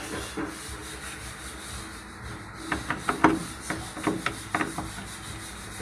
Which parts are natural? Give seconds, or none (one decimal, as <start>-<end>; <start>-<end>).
0.0-5.8